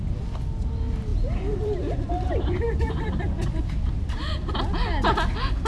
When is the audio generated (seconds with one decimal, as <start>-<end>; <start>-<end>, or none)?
1.1-4.5

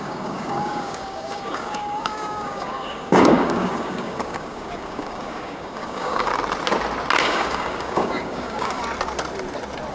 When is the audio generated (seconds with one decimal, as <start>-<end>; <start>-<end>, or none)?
0.0-6.3; 7.2-8.8